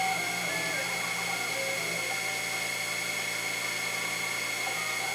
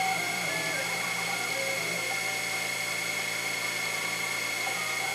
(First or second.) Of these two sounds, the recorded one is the first